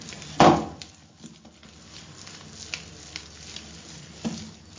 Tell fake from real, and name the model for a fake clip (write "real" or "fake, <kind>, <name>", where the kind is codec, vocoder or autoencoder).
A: real